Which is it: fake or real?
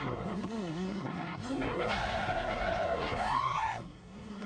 fake